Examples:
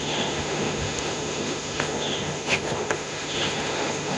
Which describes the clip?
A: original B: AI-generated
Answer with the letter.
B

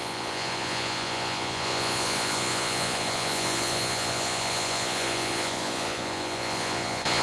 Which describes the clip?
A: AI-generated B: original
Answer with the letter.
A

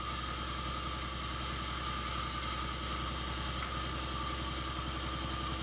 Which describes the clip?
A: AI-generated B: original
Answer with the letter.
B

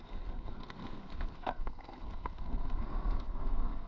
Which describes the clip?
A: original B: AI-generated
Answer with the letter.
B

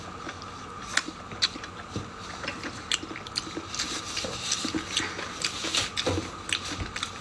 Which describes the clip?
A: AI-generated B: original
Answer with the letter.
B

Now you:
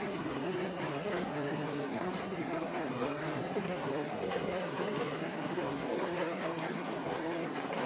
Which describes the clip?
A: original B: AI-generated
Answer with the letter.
B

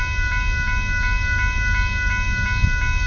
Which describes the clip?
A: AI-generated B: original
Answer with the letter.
B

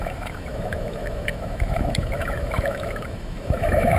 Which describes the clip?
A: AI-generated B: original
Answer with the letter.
A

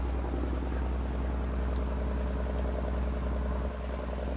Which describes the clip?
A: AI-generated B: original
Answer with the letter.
B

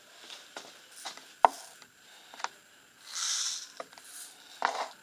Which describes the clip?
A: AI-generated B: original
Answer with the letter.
B